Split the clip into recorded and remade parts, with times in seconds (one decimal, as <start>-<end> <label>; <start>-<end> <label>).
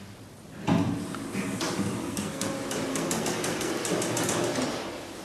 0.0-2.0 recorded; 2.0-2.5 remade; 2.5-2.9 recorded; 2.9-3.7 remade; 3.7-5.2 recorded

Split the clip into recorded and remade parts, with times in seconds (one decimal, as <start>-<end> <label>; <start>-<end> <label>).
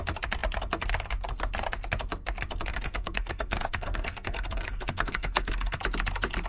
0.0-2.7 recorded; 2.7-5.8 remade; 5.8-6.5 recorded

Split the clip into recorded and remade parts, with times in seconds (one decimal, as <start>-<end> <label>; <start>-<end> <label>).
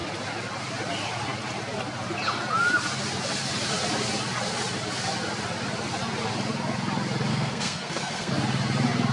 0.0-7.3 recorded; 7.3-8.3 remade; 8.3-9.1 recorded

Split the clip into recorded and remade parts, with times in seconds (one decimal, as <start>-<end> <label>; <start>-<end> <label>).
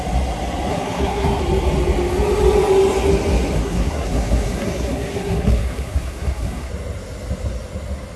0.0-0.7 recorded; 0.7-1.4 remade; 1.4-3.6 recorded; 3.6-6.7 remade; 6.7-8.2 recorded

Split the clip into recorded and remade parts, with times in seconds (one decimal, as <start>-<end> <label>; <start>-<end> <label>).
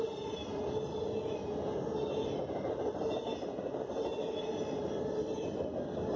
0.0-6.2 recorded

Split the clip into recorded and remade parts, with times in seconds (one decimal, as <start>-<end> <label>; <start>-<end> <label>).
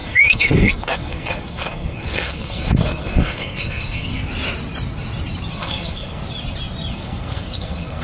0.0-4.1 remade; 4.1-5.5 recorded; 5.5-6.2 remade; 6.2-6.9 recorded; 6.9-8.0 remade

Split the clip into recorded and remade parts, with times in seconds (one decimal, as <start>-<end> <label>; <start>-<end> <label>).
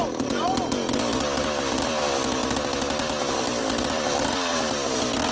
0.0-5.3 recorded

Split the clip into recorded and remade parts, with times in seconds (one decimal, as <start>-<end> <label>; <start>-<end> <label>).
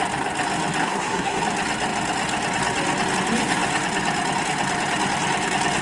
0.0-0.8 recorded; 0.8-1.4 remade; 1.4-5.8 recorded